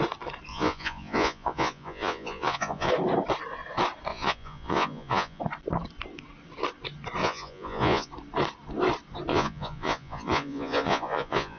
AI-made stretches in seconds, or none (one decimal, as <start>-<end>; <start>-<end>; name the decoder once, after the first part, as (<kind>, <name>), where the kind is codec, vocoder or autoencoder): 0.5-2.9 (vocoder, Vocos); 4.1-5.4; 7.2-8.1; 9.3-11.6